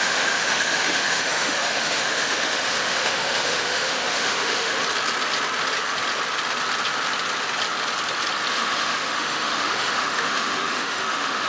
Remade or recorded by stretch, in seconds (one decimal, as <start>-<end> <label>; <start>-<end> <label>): 0.0-4.8 remade; 4.8-8.5 recorded; 8.5-11.5 remade